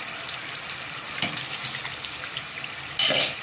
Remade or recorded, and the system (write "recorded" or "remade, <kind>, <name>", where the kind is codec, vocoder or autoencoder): recorded